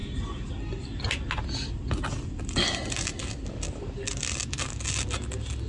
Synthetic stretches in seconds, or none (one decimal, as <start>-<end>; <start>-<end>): none